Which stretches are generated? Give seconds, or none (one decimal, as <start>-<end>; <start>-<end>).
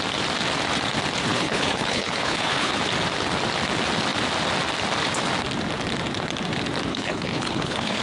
1.3-2.7; 6.9-8.0